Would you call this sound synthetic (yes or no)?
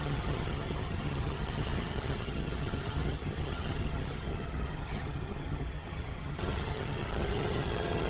yes